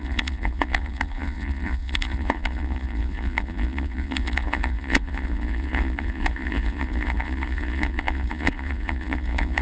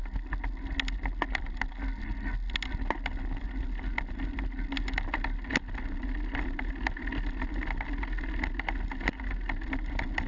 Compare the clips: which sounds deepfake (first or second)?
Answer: first